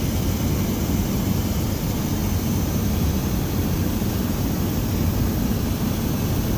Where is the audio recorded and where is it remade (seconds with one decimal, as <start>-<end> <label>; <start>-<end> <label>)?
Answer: 0.0-2.2 recorded; 2.2-4.2 remade; 4.2-6.6 recorded